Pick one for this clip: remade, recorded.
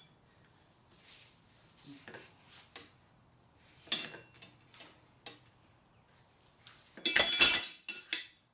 recorded